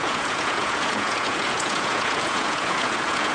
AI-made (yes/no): yes